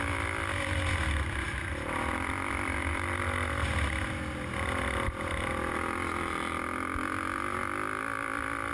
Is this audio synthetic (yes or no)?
no